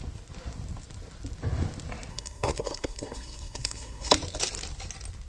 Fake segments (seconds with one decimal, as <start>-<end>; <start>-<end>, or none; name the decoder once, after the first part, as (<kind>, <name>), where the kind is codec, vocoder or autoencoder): 2.1-4.1 (codec, SNAC)